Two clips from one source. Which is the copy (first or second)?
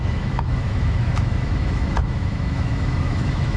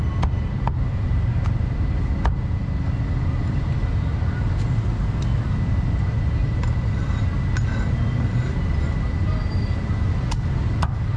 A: first